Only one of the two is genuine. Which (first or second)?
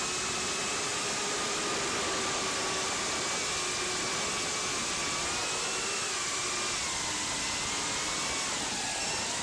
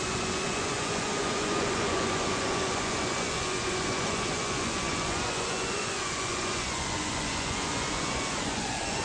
first